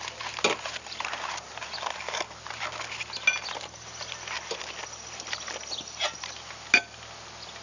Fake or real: real